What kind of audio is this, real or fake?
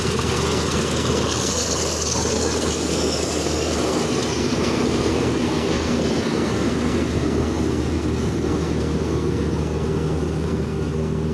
fake